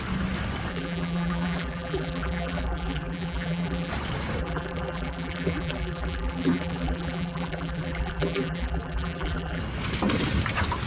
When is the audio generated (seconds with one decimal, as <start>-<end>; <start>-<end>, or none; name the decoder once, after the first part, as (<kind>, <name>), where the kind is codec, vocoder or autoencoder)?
0.7-3.9 (vocoder, BigVGAN v2); 4.4-9.6